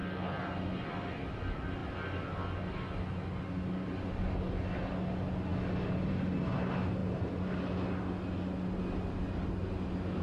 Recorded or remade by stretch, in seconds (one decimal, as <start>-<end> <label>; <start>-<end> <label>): 0.0-10.2 recorded